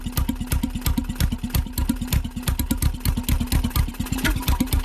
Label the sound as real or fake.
real